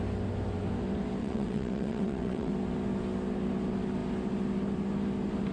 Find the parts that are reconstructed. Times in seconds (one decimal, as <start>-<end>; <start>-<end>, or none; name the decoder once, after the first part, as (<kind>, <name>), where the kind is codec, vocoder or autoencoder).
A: 1.2-2.5 (vocoder, WaveNeXt)